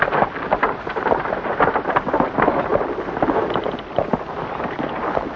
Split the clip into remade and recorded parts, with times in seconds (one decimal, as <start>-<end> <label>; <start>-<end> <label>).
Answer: 0.0-5.4 recorded